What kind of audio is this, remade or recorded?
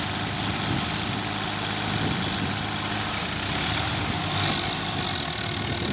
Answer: recorded